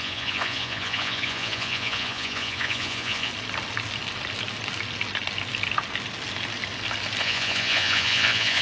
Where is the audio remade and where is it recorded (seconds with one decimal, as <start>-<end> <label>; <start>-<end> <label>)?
0.0-3.3 remade; 3.3-7.2 recorded; 7.2-8.6 remade